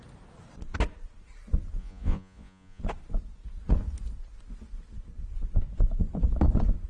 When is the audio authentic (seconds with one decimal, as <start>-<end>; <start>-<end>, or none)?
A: 0.0-1.8; 2.8-6.9